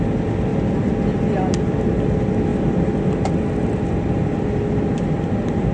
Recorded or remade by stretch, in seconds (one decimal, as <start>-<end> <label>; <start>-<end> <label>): 0.0-5.7 recorded